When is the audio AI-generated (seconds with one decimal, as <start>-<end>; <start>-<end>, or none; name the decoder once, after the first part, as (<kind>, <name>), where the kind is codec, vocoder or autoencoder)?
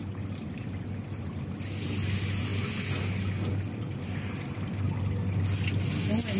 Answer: none